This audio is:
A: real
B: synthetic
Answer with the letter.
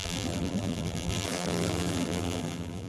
B